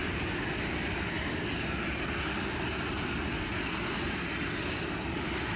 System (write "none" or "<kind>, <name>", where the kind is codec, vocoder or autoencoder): none